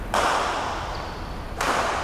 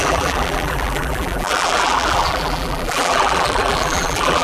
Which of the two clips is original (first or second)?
first